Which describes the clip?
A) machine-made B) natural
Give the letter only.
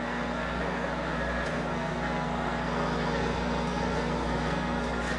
A